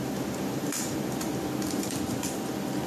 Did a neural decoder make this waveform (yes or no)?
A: no